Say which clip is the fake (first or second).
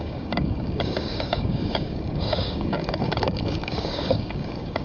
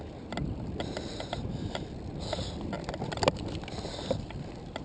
first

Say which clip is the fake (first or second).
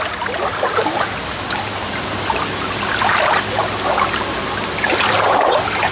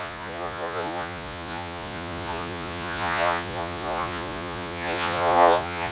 second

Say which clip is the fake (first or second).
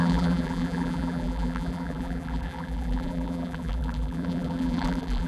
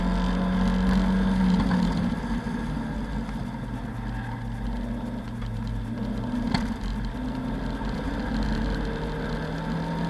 first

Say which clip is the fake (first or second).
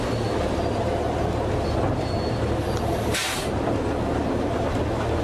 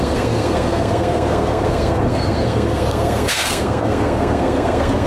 second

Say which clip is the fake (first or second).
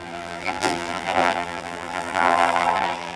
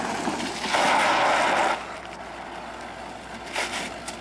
first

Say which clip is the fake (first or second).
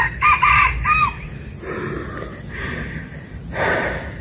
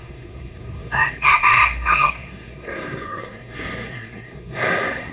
second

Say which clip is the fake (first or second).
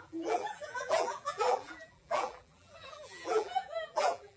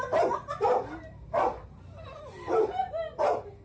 first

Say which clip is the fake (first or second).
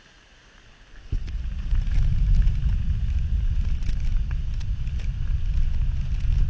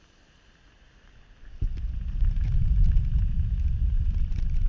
second